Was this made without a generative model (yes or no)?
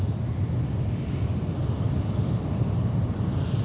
yes